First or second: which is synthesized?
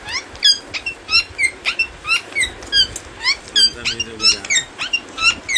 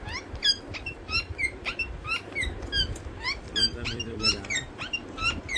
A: second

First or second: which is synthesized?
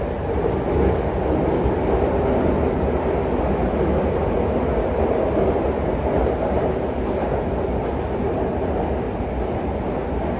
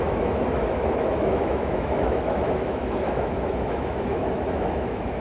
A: second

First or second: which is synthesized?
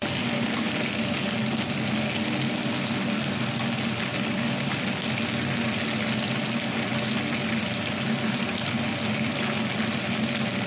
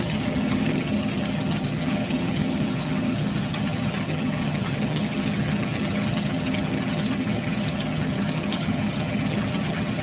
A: second